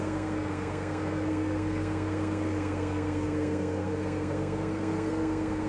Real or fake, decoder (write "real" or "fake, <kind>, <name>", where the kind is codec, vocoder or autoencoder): fake, codec, SNAC